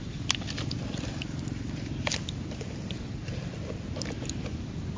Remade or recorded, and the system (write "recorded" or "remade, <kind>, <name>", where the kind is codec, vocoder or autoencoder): recorded